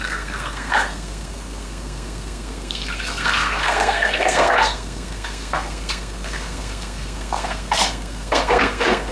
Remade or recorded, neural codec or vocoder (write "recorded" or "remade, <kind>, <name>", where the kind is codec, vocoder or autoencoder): remade, codec, SNAC